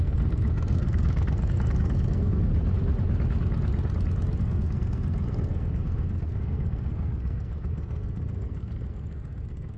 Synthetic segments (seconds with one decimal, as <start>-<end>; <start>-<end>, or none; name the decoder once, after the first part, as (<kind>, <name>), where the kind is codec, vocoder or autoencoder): 0.0-2.5 (codec, SNAC); 4.4-9.8